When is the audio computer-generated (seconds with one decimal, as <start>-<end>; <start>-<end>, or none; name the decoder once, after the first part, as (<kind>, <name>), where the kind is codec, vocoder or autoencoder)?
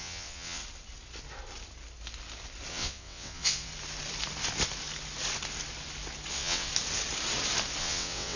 0.0-0.6 (vocoder, WaveNeXt); 2.7-3.7; 6.3-6.7; 7.8-8.4